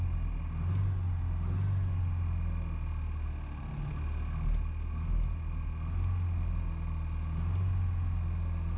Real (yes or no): yes